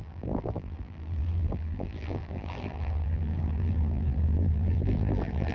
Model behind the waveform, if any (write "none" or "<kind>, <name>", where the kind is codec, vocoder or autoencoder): vocoder, BigVGAN v2